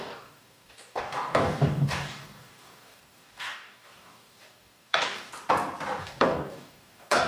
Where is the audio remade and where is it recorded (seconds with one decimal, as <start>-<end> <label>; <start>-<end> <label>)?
0.0-5.3 remade; 5.3-6.0 recorded; 6.0-7.3 remade